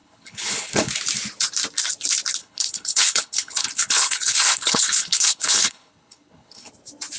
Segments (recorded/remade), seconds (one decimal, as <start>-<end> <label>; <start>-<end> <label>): 0.0-0.9 remade; 0.9-2.4 recorded; 2.4-6.7 remade; 6.7-7.2 recorded

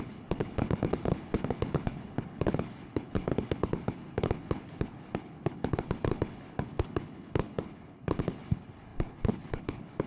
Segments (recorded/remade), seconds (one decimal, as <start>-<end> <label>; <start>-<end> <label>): 0.0-10.1 remade

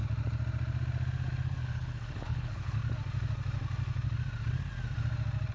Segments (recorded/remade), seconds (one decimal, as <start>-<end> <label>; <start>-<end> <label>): 0.0-1.6 recorded; 1.6-2.8 remade; 2.8-5.5 recorded

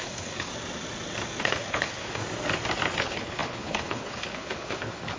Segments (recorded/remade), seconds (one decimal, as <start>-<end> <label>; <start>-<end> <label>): 0.0-0.5 remade; 0.5-1.4 recorded; 1.4-2.2 remade; 2.2-3.0 recorded; 3.0-5.2 remade

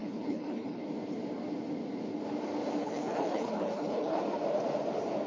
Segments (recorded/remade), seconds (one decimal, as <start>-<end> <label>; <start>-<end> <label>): 0.0-0.8 remade; 0.8-2.8 recorded; 2.8-4.2 remade; 4.2-5.3 recorded

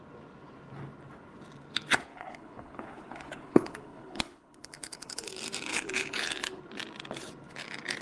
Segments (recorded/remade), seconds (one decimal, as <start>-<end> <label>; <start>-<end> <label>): 0.0-2.1 recorded; 2.1-5.3 remade; 5.3-5.7 recorded; 5.7-6.6 remade; 6.6-8.0 recorded

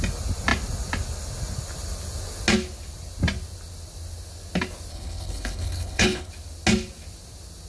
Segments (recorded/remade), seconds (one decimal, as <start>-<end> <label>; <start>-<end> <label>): 0.0-4.9 recorded; 4.9-6.3 remade; 6.3-7.7 recorded

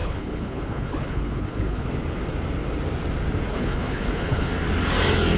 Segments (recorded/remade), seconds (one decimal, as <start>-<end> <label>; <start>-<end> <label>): 0.0-1.9 remade; 1.9-3.5 recorded; 3.5-4.5 remade; 4.5-5.4 recorded